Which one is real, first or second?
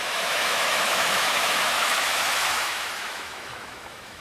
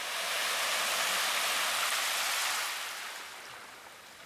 second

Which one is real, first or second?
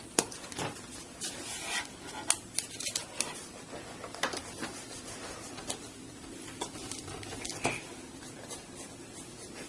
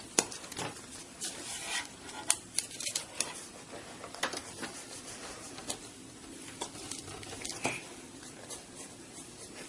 first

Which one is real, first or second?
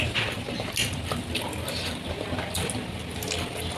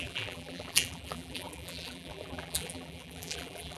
first